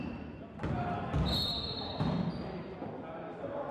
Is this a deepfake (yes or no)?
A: no